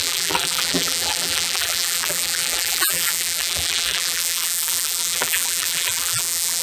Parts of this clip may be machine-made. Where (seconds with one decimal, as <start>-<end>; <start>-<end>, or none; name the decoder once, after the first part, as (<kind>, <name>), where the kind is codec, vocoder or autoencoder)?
0.0-6.6 (vocoder, BigVGAN v2)